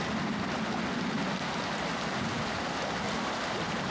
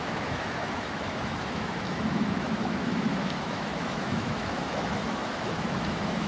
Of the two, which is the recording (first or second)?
first